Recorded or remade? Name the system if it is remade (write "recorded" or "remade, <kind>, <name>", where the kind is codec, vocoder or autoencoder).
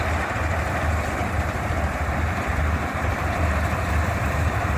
remade, vocoder, BigVGAN v2